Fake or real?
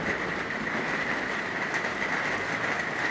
real